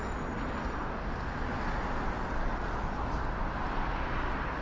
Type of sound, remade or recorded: recorded